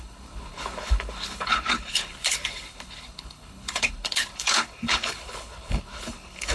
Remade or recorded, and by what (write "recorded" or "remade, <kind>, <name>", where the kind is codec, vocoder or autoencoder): remade, codec, HILCodec